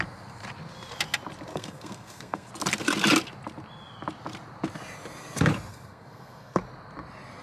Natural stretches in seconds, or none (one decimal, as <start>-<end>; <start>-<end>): 0.0-1.5; 2.5-5.7; 6.6-7.4